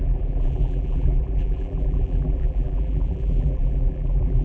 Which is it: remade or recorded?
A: remade